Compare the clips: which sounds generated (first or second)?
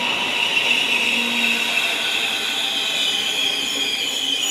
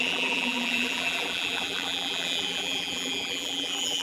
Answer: second